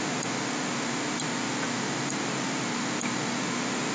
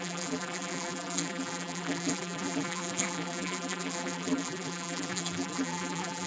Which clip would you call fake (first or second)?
second